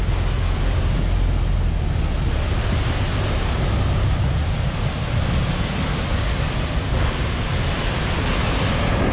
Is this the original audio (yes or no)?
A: yes